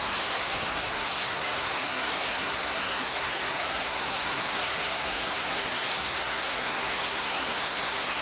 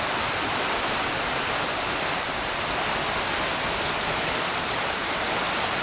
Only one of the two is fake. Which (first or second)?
first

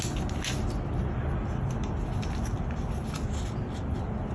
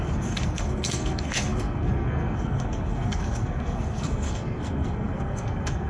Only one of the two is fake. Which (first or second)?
second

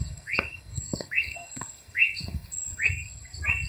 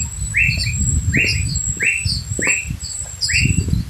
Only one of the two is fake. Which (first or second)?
first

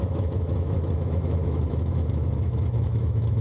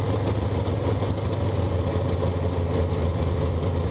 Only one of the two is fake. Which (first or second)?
first